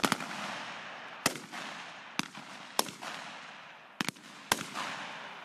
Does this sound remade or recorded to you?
recorded